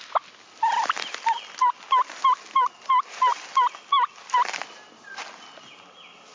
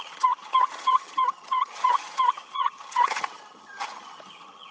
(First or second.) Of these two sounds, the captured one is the first